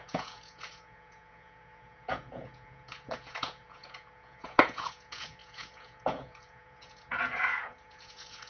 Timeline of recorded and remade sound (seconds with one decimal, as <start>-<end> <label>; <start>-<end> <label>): 0.0-8.5 remade